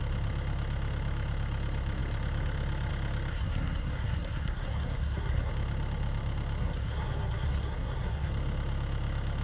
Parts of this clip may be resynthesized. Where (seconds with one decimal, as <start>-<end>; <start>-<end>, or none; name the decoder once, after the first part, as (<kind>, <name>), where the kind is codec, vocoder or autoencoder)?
3.3-5.5 (codec, SNAC); 6.6-8.3